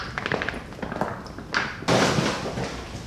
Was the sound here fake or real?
real